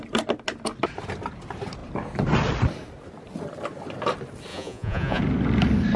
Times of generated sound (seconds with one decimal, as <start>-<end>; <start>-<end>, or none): 4.5-5.2